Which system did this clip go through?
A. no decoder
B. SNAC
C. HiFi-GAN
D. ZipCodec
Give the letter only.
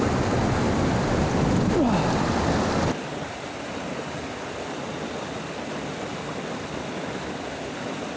A